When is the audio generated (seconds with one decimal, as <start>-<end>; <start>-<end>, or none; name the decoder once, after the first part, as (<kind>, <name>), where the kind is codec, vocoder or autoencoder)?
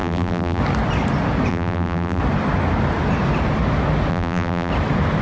0.0-0.6 (vocoder, BigVGAN v2); 1.5-2.2; 4.1-4.7